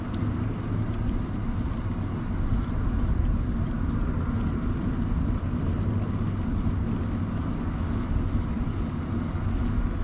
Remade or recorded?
recorded